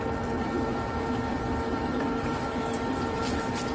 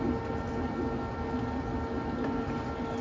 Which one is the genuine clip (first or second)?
second